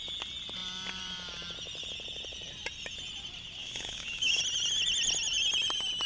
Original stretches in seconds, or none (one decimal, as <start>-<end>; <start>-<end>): 0.0-3.6; 4.4-6.1